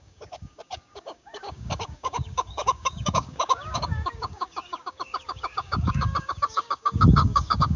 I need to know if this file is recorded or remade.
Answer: remade